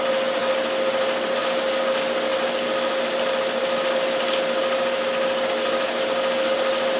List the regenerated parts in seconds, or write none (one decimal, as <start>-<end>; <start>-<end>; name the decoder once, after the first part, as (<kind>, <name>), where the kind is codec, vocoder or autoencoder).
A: none